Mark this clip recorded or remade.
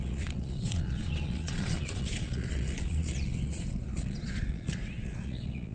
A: remade